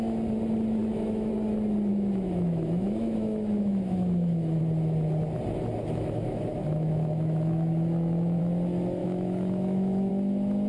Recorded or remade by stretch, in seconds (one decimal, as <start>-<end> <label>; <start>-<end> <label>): 0.0-0.8 recorded; 0.8-1.3 remade; 1.3-1.9 recorded; 1.9-4.6 remade; 4.6-5.8 recorded; 5.8-8.4 remade; 8.4-9.0 recorded; 9.0-10.1 remade; 10.1-10.7 recorded